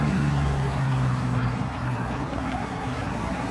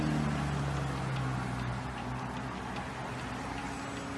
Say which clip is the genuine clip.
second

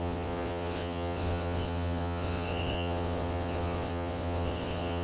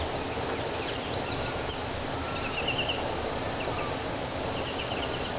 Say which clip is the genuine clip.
second